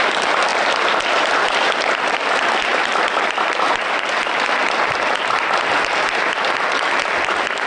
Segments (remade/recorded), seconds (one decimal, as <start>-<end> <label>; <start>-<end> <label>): 0.0-7.7 recorded